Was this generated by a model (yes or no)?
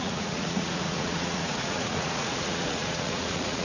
yes